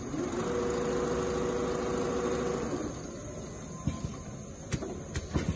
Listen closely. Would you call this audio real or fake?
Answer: real